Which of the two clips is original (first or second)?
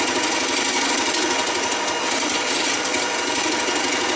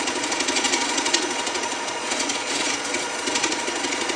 first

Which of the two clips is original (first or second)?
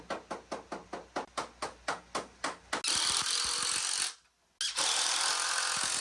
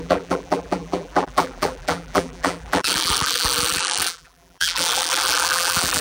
first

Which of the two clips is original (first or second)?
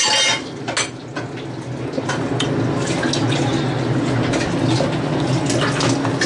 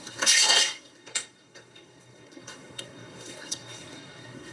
first